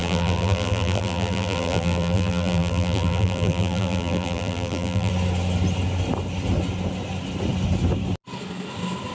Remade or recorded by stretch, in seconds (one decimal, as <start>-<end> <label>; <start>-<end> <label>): 0.0-5.1 remade; 5.1-9.1 recorded